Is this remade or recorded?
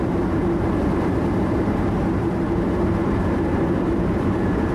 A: remade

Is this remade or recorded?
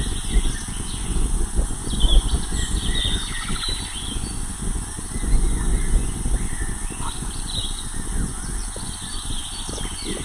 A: remade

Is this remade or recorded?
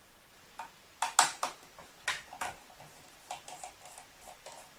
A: recorded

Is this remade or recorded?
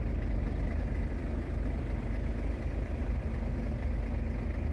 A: recorded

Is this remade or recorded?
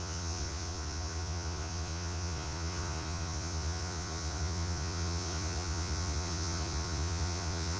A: remade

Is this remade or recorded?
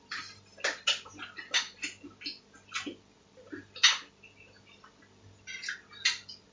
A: recorded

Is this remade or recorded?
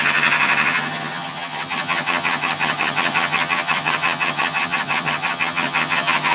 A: remade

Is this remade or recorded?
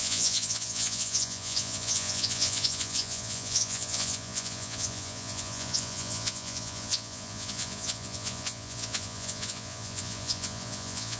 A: remade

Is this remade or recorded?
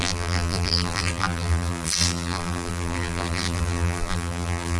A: remade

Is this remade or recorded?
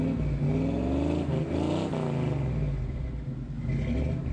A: recorded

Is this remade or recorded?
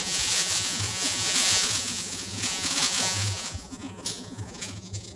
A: remade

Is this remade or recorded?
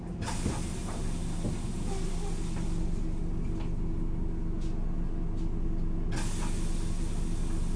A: recorded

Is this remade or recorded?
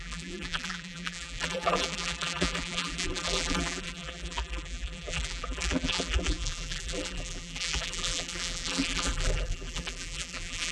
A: remade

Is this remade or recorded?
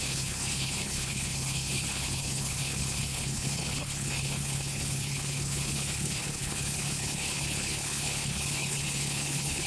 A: remade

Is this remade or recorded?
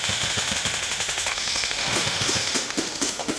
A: remade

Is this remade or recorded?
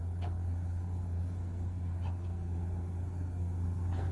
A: remade